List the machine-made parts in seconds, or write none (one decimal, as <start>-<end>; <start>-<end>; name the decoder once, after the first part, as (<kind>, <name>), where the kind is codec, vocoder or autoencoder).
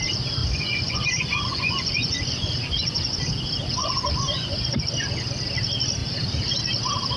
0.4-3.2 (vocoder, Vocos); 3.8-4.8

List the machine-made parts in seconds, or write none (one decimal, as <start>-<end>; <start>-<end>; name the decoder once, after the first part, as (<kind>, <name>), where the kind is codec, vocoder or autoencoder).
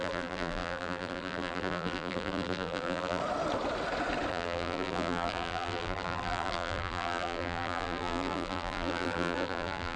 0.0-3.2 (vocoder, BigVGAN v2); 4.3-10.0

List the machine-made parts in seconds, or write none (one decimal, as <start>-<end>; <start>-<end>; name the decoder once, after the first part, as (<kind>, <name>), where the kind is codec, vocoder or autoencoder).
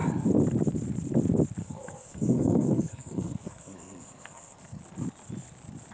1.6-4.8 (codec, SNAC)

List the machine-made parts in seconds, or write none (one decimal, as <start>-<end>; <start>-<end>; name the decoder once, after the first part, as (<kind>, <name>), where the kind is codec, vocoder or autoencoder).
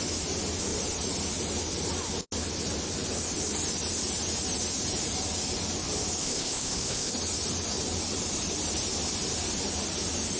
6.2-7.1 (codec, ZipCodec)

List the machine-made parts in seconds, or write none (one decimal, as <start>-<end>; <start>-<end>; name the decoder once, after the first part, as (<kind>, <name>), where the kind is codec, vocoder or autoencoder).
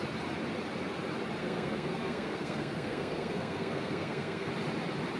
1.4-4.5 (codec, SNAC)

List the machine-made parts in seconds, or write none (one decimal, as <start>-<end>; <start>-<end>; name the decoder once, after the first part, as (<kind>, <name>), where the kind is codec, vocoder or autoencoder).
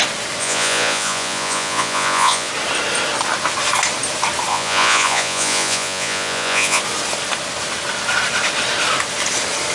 0.4-2.5 (vocoder, Vocos); 4.5-6.8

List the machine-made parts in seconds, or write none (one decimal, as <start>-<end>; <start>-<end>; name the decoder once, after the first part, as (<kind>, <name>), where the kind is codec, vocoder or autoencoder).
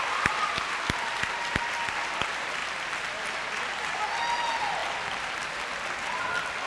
2.6-3.6 (vocoder, BigVGAN v2); 4.8-5.4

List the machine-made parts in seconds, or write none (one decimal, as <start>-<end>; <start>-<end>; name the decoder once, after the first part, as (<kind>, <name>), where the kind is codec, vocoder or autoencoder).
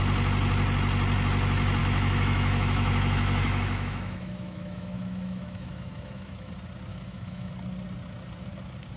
1.8-6.5 (autoencoder, DAC-VAE); 6.9-7.5